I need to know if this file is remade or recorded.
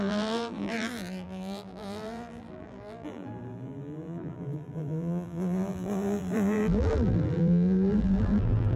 remade